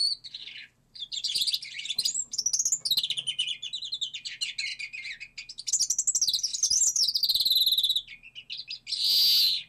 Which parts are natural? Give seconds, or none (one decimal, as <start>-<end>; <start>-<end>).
0.0-0.6; 2.4-9.7